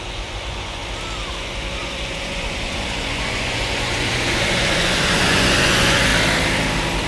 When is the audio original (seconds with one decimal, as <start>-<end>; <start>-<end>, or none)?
0.8-1.3; 6.1-7.1